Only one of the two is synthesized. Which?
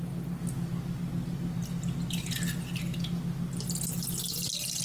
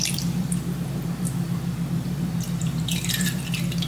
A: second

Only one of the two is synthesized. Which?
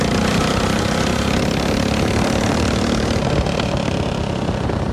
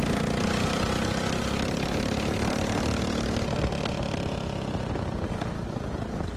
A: first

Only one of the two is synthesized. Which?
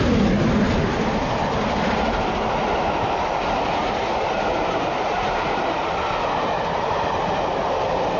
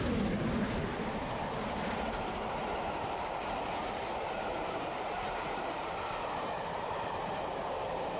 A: second